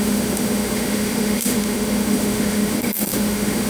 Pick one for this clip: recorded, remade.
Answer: remade